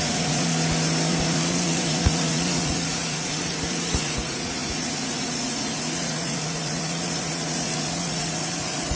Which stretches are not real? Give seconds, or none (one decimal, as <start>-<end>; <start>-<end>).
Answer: 0.0-0.5; 1.1-9.0